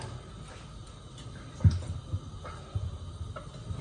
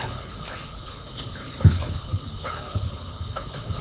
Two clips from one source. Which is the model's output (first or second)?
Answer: second